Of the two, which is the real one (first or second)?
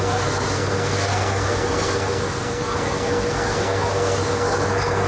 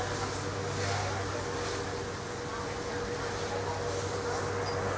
second